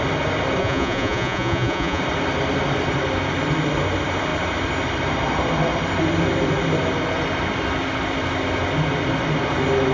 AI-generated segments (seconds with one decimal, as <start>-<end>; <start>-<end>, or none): 0.6-2.0